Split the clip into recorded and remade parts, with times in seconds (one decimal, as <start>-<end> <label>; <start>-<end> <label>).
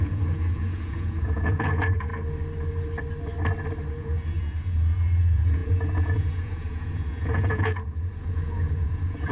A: 0.0-2.1 remade; 2.1-3.9 recorded; 3.9-9.3 remade